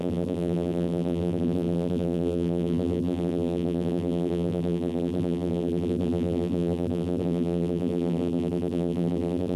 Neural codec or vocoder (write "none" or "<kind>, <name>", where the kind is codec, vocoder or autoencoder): vocoder, BigVGAN v2